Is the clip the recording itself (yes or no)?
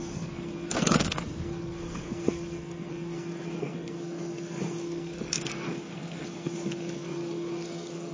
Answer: no